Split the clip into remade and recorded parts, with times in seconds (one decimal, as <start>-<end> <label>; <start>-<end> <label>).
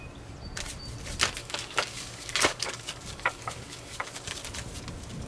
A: 0.0-1.4 recorded; 1.4-4.4 remade; 4.4-5.3 recorded